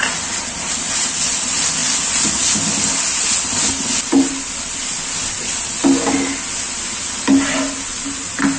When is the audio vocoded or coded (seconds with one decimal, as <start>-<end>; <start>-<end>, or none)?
none

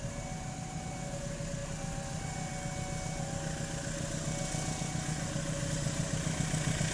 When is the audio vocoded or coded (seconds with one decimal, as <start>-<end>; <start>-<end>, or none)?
none

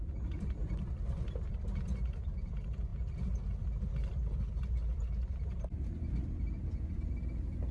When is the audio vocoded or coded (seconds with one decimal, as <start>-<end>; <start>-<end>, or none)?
none

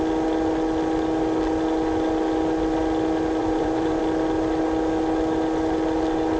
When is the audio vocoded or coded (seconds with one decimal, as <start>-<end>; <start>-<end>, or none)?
3.4-4.0